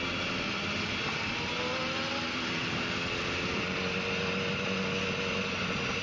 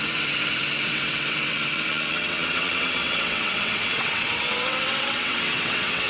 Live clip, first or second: first